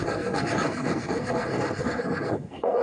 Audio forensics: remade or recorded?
remade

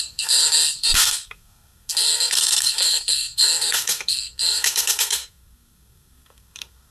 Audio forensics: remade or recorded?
remade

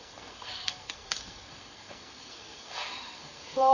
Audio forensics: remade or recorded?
remade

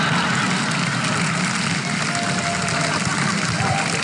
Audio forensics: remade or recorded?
recorded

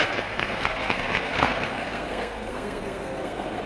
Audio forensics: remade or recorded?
remade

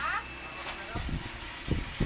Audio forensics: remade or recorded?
recorded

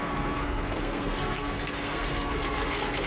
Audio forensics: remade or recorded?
remade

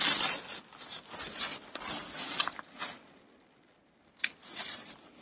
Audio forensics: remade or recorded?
recorded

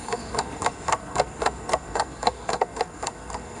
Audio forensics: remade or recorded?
remade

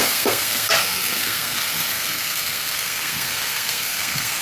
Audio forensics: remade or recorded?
remade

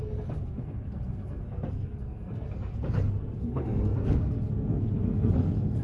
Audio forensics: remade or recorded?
remade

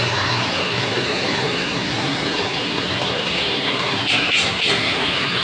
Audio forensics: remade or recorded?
remade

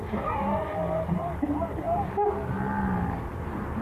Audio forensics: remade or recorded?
recorded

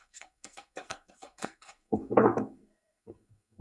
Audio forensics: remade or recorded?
remade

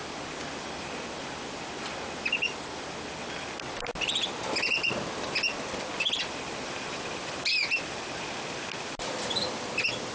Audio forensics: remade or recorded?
recorded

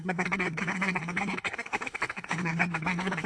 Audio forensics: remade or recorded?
remade